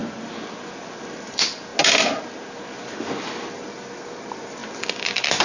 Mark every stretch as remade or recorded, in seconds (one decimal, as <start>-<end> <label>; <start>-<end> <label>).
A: 0.0-1.7 remade; 1.7-3.5 recorded; 3.5-4.6 remade; 4.6-5.4 recorded